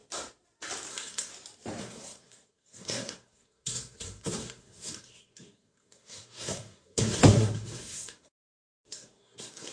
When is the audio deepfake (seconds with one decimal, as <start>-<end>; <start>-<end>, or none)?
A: 0.9-1.3; 1.8-9.7